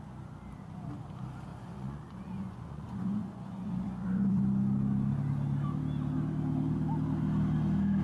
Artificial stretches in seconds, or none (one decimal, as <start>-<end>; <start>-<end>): 1.5-4.4